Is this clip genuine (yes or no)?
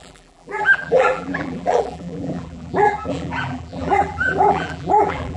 no